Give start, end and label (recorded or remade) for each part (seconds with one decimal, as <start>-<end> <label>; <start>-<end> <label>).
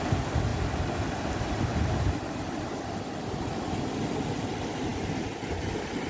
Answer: 0.0-6.1 recorded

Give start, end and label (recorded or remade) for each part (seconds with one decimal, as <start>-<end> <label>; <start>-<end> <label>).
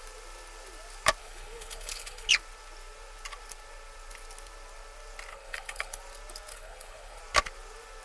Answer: 0.0-1.2 recorded; 1.2-2.3 remade; 2.3-5.3 recorded; 5.3-6.0 remade; 6.0-6.5 recorded; 6.5-7.2 remade; 7.2-8.0 recorded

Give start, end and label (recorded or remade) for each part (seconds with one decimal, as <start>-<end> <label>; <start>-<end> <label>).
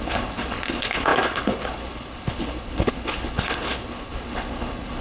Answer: 0.0-5.0 remade